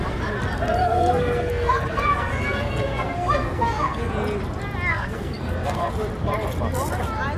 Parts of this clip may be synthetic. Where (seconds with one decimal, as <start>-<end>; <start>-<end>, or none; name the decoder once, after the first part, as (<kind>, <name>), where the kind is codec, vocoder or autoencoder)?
0.8-4.1 (codec, SNAC); 4.9-5.9